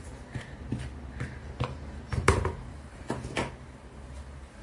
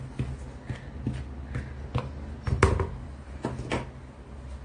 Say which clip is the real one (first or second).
second